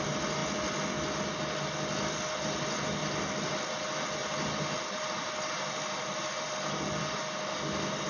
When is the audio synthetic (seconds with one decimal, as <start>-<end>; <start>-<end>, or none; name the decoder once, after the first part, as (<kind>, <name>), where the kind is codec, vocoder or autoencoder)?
none